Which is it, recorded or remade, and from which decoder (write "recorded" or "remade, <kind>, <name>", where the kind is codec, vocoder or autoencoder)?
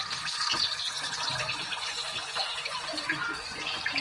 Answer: remade, vocoder, Vocos